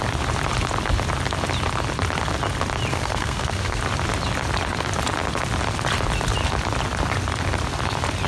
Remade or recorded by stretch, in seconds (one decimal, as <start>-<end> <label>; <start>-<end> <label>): 0.0-2.9 recorded; 2.9-3.8 remade; 3.8-8.3 recorded

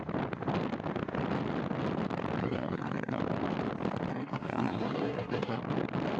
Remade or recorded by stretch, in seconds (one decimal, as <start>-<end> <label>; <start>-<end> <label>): 0.0-2.4 recorded; 2.4-3.2 remade; 3.2-4.1 recorded; 4.1-5.6 remade; 5.6-6.2 recorded

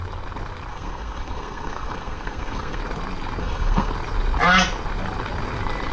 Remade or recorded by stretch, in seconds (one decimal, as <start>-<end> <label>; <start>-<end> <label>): 0.0-0.7 recorded; 0.7-2.8 remade; 2.8-3.4 recorded; 3.4-3.9 remade; 3.9-5.9 recorded

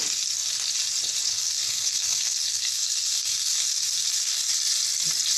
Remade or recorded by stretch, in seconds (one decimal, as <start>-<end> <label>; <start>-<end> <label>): 0.0-1.3 recorded; 1.3-4.5 remade; 4.5-5.4 recorded

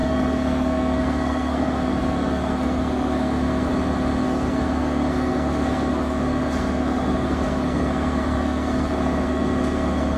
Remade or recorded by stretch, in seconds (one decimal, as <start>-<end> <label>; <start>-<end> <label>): 0.0-3.7 remade; 3.7-4.2 recorded; 4.2-10.2 remade

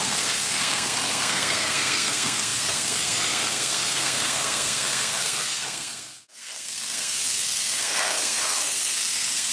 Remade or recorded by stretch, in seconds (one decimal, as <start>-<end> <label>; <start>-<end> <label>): 0.0-9.5 remade